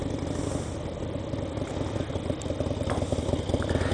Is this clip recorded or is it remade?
recorded